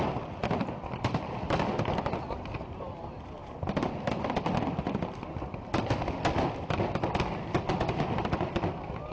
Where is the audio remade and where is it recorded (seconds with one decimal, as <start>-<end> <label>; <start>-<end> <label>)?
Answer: 0.0-9.1 recorded